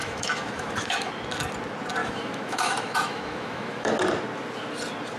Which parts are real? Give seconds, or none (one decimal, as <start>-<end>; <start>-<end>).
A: 1.1-2.0; 3.9-5.2